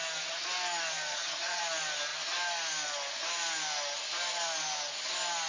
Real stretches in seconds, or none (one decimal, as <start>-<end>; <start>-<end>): 0.0-1.1; 1.6-5.5

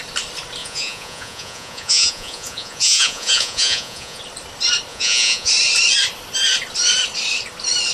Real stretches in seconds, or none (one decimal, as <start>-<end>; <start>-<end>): 0.0-0.6; 4.2-4.9; 5.5-7.9

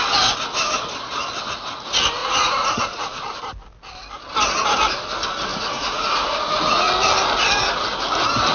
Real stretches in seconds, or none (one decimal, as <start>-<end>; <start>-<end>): 0.0-2.2; 3.4-5.5; 6.9-8.5

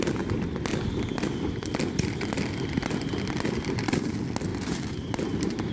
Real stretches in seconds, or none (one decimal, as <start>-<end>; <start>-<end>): 0.0-4.5